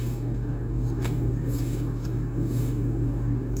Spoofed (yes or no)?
yes